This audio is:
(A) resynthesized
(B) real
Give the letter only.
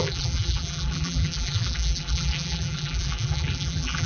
A